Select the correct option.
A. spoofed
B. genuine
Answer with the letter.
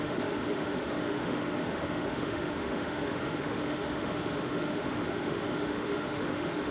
A